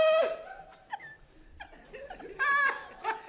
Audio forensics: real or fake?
real